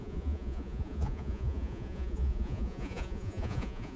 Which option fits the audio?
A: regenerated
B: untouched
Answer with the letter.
A